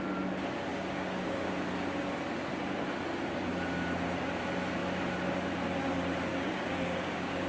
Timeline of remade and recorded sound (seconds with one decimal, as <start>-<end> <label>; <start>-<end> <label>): 0.0-0.7 recorded; 0.7-1.5 remade; 1.5-6.3 recorded; 6.3-7.5 remade